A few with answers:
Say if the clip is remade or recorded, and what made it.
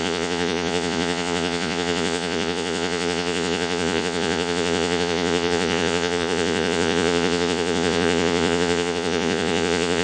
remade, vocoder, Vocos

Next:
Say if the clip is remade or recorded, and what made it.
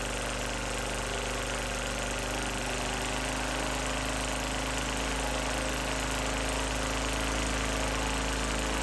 recorded